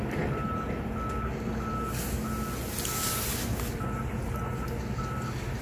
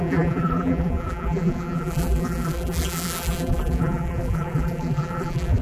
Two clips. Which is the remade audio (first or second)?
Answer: second